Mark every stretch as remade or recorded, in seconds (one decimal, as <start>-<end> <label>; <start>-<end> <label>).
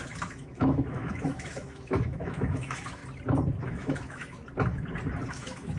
0.0-3.0 remade; 3.0-3.7 recorded; 3.7-4.4 remade; 4.4-5.3 recorded; 5.3-5.8 remade